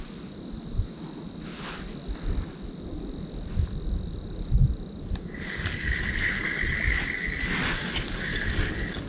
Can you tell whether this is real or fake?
real